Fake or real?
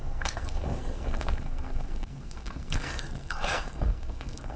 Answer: fake